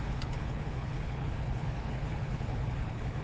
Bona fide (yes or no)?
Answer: no